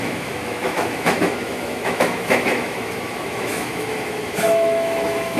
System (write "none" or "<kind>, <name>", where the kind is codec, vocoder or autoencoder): autoencoder, DAC-VAE